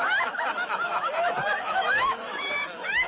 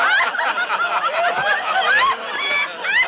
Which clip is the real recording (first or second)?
second